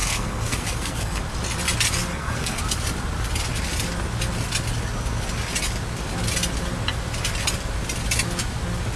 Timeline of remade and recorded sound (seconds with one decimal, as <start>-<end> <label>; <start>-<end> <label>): 0.0-1.2 remade; 1.2-2.1 recorded; 2.1-2.6 remade; 2.6-9.0 recorded